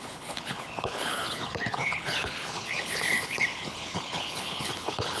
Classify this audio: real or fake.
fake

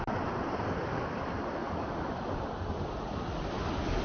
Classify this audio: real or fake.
real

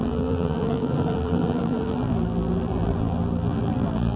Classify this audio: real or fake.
fake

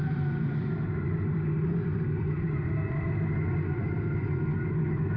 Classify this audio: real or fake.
real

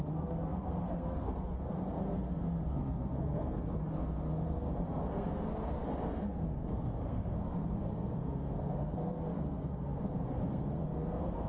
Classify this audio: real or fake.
fake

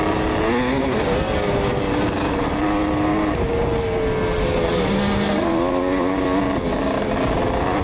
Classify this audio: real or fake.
real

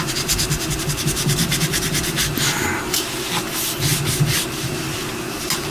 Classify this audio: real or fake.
real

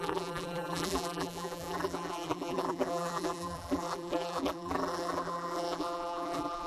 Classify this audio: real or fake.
fake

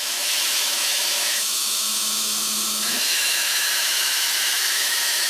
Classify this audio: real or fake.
fake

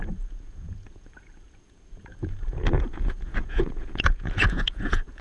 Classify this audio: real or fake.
fake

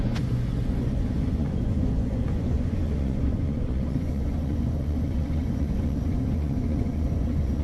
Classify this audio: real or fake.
fake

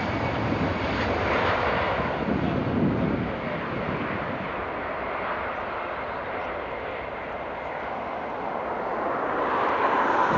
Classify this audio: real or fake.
real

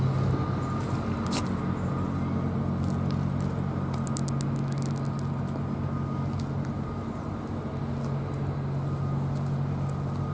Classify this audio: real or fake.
real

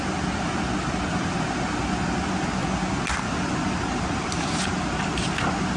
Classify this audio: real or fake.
real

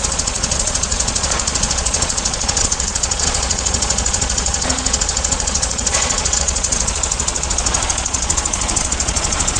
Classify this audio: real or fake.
fake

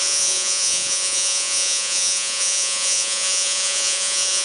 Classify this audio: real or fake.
fake